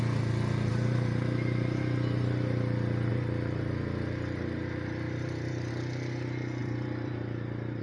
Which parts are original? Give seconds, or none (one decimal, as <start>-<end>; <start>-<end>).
0.0-0.7; 1.8-3.1; 5.7-6.6